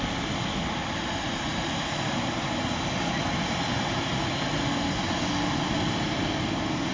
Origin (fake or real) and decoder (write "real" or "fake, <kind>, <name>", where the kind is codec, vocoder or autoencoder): real